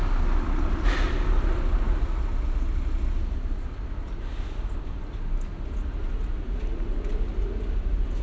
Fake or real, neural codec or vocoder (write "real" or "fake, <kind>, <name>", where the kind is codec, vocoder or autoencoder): real